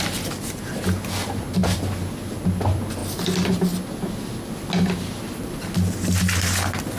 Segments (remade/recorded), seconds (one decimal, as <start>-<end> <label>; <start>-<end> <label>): 0.0-7.0 recorded